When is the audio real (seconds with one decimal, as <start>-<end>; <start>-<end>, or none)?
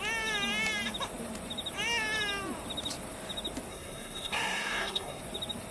0.0-3.7; 5.2-5.7